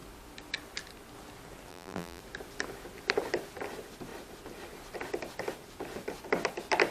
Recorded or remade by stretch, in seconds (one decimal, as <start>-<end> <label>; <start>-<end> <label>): 0.0-1.7 recorded; 1.7-2.2 remade; 2.2-6.9 recorded